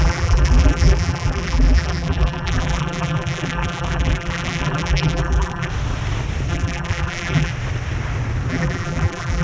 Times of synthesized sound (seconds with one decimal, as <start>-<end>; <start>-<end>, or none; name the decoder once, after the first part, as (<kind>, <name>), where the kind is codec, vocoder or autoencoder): 0.0-5.7 (vocoder, BigVGAN v2); 6.5-7.5; 8.5-9.4